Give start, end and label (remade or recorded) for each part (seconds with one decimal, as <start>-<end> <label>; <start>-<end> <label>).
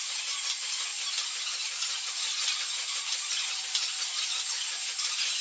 0.0-5.4 recorded